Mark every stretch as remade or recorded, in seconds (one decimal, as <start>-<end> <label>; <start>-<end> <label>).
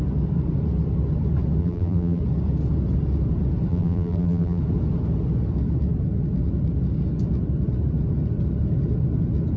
0.0-1.6 recorded; 1.6-2.2 remade; 2.2-3.7 recorded; 3.7-4.6 remade; 4.6-9.6 recorded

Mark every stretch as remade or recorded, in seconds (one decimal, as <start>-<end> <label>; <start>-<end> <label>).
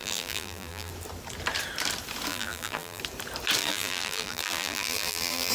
0.0-0.9 remade; 0.9-2.3 recorded; 2.3-3.0 remade; 3.0-3.6 recorded; 3.6-5.5 remade